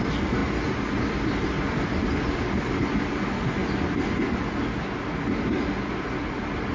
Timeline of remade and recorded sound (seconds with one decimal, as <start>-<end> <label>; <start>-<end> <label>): 0.0-6.7 recorded